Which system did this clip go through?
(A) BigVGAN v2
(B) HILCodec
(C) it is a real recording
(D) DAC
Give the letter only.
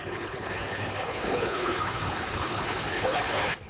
B